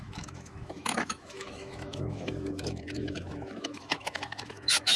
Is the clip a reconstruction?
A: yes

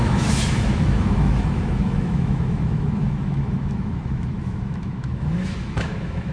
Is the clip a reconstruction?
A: yes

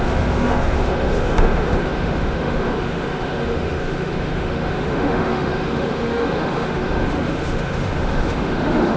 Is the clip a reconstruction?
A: yes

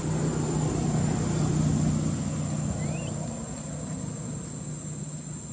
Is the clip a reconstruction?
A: no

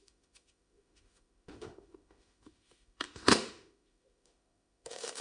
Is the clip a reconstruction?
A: yes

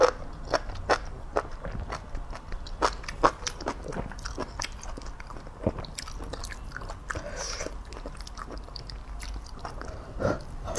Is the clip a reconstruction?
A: no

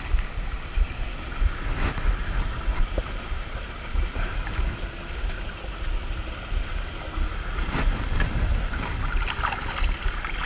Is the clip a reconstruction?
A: no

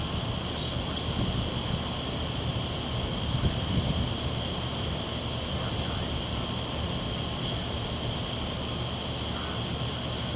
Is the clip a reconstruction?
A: no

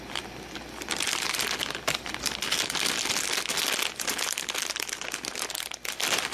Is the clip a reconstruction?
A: no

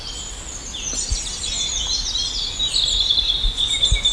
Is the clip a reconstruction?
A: no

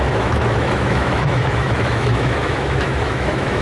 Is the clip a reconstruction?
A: yes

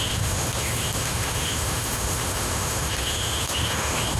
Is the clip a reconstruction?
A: yes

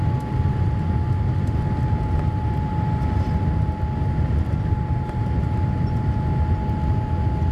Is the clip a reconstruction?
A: no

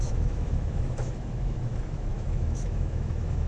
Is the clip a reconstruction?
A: yes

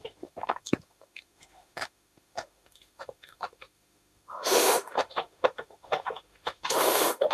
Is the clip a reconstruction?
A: yes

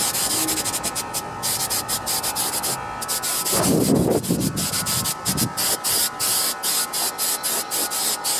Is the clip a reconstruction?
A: no